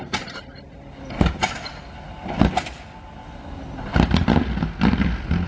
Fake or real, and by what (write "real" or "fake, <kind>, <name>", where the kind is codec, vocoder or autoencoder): real